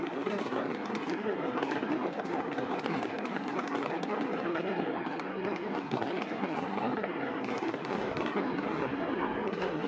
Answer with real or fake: fake